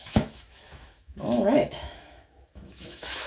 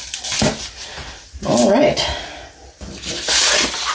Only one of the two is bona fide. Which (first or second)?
second